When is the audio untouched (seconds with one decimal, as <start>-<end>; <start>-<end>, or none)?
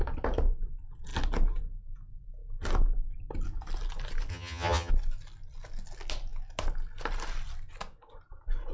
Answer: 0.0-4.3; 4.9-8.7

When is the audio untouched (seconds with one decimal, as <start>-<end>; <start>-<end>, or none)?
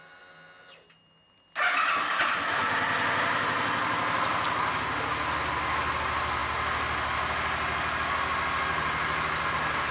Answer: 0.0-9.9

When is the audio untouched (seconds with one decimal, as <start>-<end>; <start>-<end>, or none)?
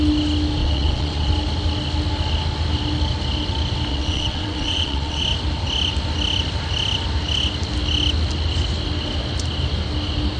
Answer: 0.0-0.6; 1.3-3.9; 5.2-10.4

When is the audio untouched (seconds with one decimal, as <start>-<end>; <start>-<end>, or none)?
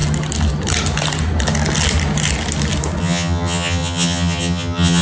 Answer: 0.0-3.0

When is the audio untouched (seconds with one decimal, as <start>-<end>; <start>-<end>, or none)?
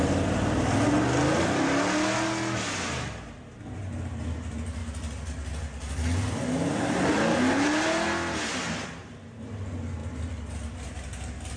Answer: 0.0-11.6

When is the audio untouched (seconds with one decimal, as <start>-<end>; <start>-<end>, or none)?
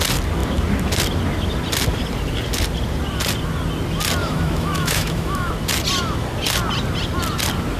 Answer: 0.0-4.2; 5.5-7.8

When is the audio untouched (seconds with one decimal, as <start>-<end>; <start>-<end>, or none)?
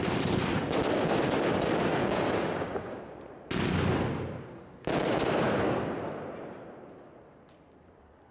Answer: 0.0-2.0; 3.0-8.3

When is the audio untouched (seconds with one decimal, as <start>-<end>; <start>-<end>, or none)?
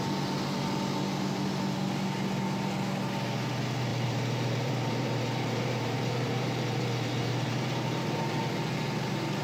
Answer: 0.0-3.9; 8.4-9.4